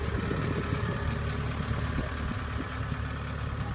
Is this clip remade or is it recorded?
recorded